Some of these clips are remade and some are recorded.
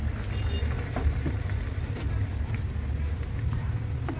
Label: recorded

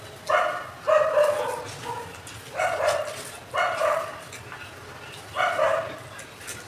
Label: recorded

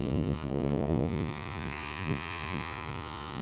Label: remade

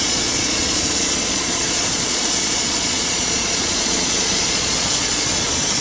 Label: remade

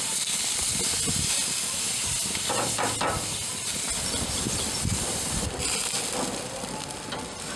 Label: recorded